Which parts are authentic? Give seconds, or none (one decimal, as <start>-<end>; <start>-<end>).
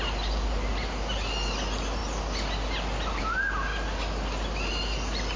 0.0-5.4